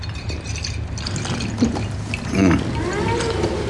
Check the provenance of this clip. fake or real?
real